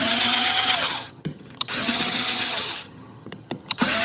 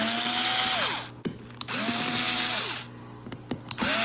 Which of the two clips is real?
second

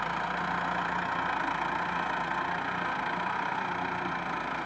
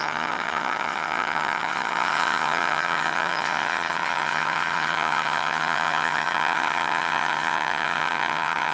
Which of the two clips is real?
first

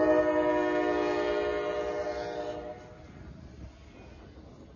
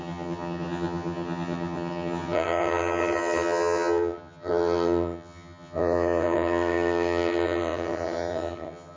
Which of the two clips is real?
first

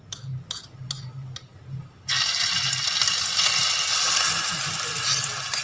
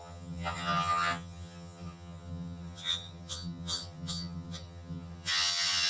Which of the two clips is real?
first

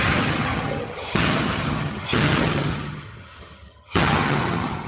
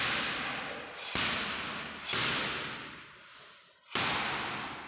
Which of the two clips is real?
second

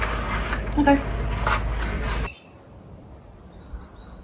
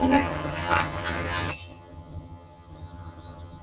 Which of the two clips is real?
first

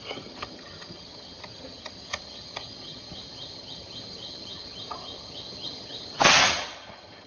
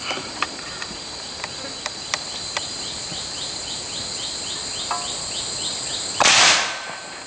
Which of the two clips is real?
second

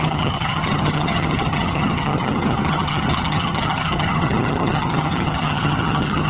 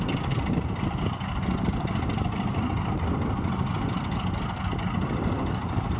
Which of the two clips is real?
second